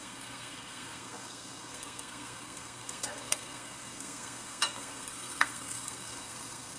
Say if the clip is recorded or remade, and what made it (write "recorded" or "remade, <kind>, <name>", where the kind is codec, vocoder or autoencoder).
remade, codec, SNAC